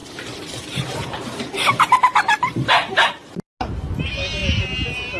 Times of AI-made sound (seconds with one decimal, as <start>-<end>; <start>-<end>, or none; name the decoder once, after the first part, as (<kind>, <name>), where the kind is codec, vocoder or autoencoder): 0.0-3.1 (vocoder, BigVGAN v2)